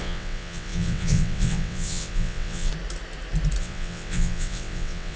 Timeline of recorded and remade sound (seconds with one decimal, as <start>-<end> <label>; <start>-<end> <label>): 0.0-2.7 remade; 2.7-3.6 recorded; 3.6-5.2 remade